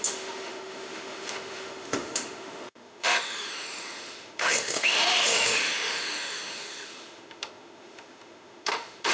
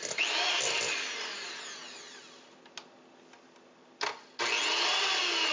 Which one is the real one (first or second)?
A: second